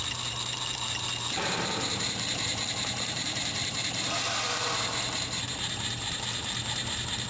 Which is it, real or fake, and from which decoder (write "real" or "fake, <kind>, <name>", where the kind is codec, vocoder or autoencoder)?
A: fake, vocoder, BigVGAN v2